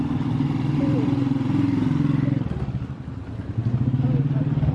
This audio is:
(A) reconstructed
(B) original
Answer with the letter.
B